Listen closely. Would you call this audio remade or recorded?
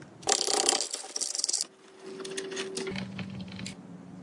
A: recorded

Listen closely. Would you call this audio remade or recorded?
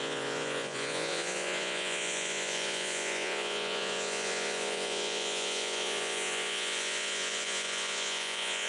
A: remade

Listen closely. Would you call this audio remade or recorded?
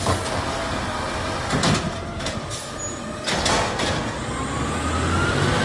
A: recorded